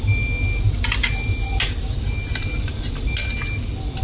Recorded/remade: recorded